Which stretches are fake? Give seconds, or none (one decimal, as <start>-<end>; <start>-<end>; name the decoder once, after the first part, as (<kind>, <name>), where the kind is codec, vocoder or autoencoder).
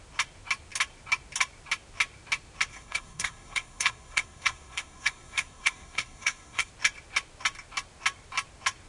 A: 2.7-6.7 (codec, SNAC)